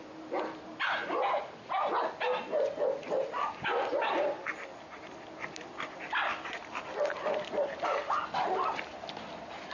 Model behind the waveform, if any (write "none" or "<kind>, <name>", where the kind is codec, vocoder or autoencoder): none